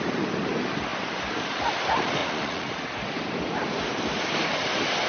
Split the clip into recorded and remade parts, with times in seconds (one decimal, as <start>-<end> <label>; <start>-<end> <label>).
0.0-2.2 recorded; 2.2-2.8 remade; 2.8-5.1 recorded